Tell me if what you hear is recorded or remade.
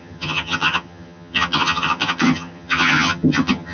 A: remade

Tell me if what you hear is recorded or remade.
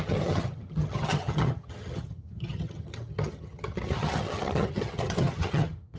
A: remade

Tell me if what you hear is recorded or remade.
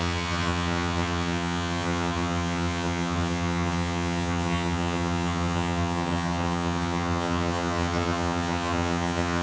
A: remade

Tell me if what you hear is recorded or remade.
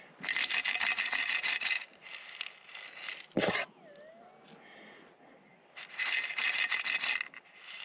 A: recorded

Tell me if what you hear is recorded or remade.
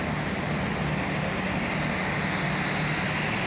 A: recorded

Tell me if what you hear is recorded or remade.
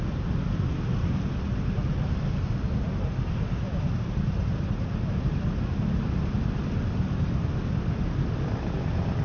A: recorded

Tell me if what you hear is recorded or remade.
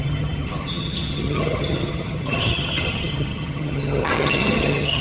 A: remade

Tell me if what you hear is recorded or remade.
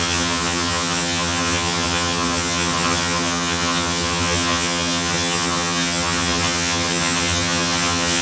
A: remade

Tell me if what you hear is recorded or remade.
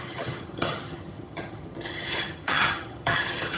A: remade